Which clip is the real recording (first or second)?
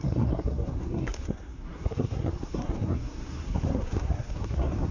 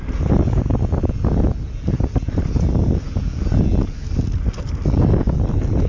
second